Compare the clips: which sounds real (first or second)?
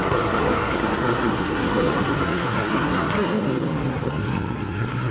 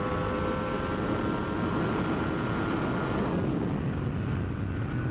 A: second